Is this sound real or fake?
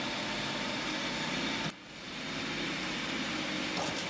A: real